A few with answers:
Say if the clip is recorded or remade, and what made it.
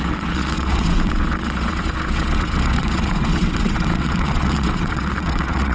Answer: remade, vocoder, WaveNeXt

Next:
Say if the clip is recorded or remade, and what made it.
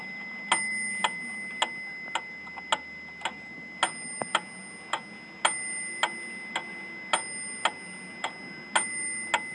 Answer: recorded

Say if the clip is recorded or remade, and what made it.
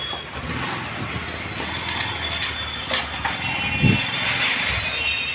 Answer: recorded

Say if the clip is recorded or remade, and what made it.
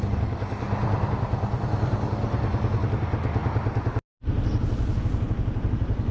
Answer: recorded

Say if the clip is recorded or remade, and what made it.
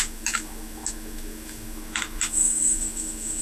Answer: remade, autoencoder, DAC-VAE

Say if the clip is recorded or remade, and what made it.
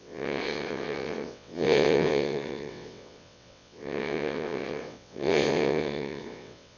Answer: remade, vocoder, WaveNeXt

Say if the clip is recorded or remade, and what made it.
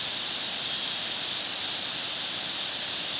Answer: recorded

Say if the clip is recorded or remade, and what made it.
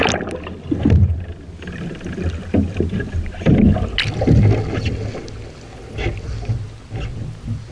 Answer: recorded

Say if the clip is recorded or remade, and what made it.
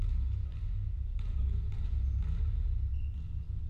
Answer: recorded